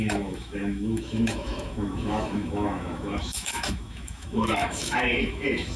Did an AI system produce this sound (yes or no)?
yes